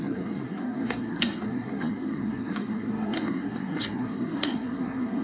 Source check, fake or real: fake